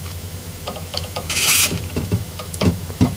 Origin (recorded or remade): remade